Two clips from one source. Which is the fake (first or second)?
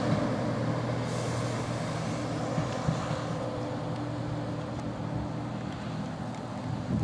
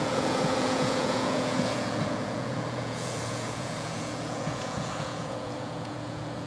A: second